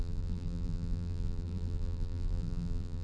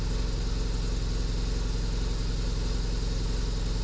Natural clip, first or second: second